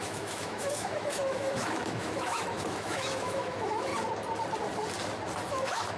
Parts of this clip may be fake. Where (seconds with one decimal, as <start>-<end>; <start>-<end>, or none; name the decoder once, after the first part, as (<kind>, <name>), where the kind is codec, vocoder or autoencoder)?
0.0-3.9 (autoencoder, DAC-VAE); 5.5-6.0